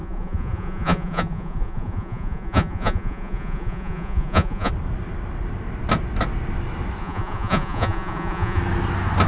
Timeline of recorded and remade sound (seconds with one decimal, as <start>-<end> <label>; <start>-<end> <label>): 0.0-4.7 remade; 4.7-7.0 recorded; 7.0-8.6 remade; 8.6-9.3 recorded